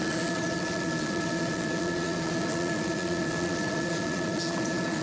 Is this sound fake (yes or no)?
yes